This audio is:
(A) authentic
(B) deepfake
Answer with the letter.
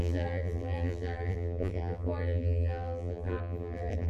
B